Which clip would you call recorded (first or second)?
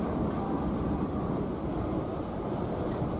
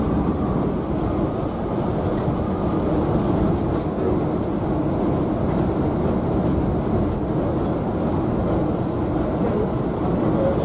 second